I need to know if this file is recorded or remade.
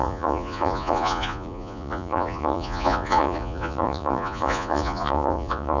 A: remade